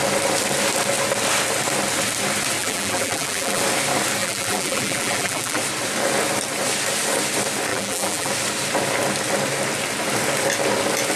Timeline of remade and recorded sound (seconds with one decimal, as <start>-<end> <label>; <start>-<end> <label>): 0.0-2.6 recorded; 2.6-3.6 remade; 3.6-4.2 recorded; 4.2-5.6 remade; 5.6-7.7 recorded; 7.7-8.3 remade; 8.3-11.2 recorded

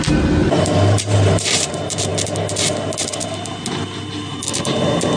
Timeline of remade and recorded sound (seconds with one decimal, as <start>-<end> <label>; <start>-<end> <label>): 0.0-0.4 recorded; 0.4-1.7 remade; 1.7-5.2 recorded

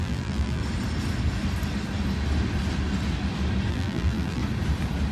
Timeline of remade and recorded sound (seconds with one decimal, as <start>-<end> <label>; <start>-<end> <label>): 0.0-0.6 remade; 0.6-3.7 recorded; 3.7-4.4 remade; 4.4-5.1 recorded

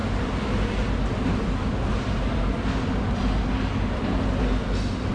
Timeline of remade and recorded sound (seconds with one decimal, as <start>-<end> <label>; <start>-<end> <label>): 0.0-5.1 recorded

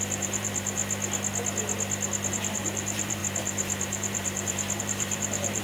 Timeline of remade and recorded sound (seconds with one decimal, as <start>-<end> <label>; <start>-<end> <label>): 0.0-0.8 remade; 0.8-2.3 recorded; 2.3-5.6 remade

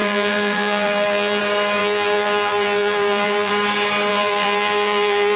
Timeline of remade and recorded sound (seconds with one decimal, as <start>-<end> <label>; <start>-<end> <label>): 0.0-1.4 remade; 1.4-1.8 recorded; 1.8-3.5 remade; 3.5-4.1 recorded; 4.1-5.4 remade

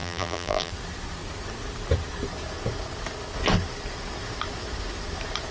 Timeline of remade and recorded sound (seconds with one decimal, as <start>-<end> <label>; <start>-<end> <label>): 0.0-0.7 remade; 0.7-5.5 recorded

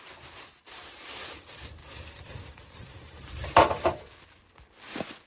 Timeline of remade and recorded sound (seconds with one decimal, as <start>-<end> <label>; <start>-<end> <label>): 0.0-1.8 recorded; 1.8-4.0 remade; 4.0-5.3 recorded